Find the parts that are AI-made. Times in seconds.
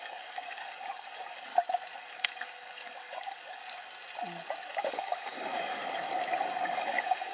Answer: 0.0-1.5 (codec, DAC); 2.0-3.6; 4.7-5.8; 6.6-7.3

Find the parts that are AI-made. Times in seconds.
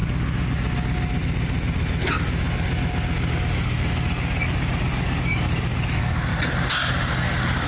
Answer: 3.3-6.3 (codec, DAC); 7.1-7.7